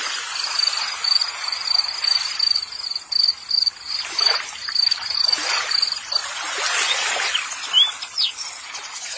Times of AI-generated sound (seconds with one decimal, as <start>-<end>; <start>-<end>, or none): none